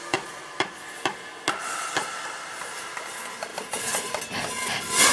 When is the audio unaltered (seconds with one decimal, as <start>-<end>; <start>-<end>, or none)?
0.0-3.5; 4.2-5.1